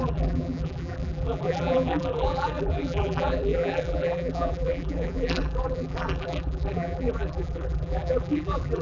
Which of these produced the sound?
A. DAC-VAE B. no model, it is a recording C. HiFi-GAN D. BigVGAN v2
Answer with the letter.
D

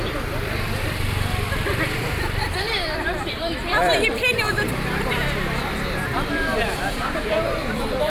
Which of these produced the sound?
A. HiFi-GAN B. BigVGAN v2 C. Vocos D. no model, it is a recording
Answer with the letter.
B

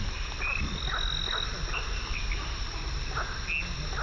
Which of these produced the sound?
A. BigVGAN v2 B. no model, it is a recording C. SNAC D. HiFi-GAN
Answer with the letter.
B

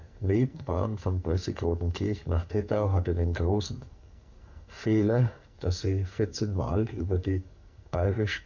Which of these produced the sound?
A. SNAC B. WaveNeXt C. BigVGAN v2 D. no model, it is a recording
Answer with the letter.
A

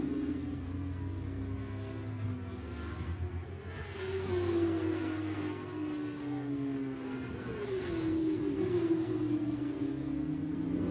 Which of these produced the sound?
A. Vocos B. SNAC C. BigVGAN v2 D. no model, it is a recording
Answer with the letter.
B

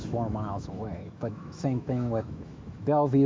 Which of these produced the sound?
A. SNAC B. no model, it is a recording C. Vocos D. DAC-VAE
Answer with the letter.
D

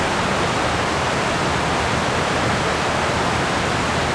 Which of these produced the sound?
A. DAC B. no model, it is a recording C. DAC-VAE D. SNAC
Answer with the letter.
B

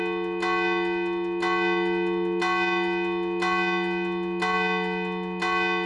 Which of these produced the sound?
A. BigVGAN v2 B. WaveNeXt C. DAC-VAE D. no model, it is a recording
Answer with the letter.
D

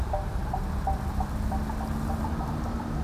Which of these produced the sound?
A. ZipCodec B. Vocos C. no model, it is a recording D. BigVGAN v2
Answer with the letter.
D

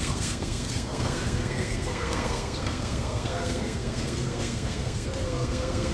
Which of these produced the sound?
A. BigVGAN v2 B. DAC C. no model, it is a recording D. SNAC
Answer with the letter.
D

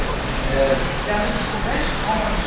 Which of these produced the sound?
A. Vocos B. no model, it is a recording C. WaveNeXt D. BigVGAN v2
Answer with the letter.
B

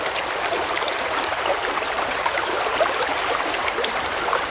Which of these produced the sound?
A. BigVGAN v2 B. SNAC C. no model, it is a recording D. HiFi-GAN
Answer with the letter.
A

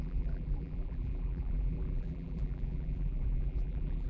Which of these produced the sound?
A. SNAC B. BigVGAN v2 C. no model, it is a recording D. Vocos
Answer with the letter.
B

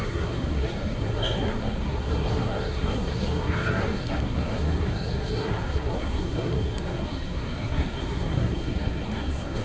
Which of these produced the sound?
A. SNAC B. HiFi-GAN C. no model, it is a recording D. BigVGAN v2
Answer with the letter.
A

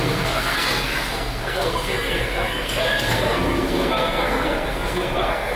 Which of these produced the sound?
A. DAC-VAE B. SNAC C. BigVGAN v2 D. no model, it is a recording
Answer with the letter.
B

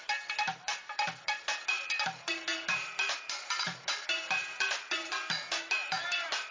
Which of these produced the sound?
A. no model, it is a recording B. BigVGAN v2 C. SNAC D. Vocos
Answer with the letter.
B